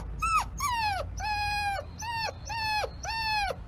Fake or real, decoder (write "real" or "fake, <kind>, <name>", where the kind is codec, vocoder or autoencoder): real